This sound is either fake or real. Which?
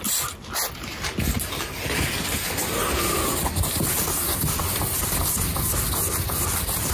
real